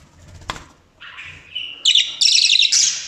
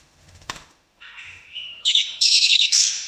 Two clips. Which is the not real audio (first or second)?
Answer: second